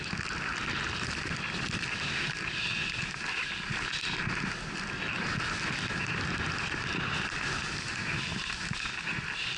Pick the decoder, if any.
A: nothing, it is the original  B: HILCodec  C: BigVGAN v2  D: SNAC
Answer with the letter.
A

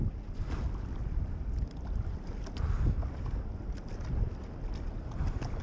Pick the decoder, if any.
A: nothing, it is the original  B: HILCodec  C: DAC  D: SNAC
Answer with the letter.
A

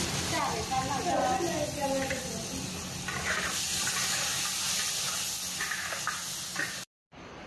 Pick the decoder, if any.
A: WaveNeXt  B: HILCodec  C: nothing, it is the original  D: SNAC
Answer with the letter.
C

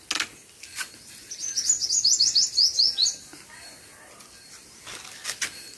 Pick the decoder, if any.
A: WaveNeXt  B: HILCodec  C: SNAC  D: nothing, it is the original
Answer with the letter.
D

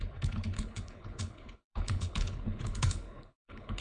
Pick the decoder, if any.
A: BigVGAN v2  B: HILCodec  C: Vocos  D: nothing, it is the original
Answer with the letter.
B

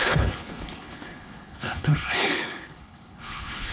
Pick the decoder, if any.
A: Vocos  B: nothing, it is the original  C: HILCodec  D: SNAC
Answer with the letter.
C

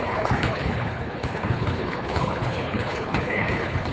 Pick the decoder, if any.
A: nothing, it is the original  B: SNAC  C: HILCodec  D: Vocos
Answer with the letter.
C